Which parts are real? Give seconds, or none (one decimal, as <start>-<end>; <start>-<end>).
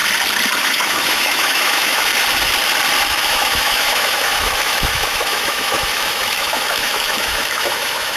0.0-0.6; 2.1-3.0